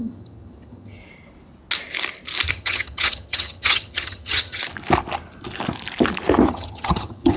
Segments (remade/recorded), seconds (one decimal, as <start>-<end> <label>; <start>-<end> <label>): 0.0-1.0 remade; 1.0-2.5 recorded; 2.5-4.6 remade; 4.6-6.5 recorded; 6.5-7.4 remade